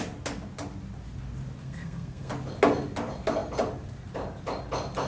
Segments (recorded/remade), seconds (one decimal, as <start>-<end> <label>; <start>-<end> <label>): 0.0-1.6 recorded; 1.6-2.3 remade; 2.3-5.1 recorded

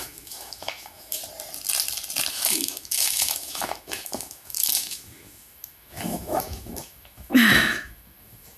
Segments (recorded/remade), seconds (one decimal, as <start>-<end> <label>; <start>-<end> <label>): 0.0-1.2 remade; 1.2-2.3 recorded; 2.3-8.6 remade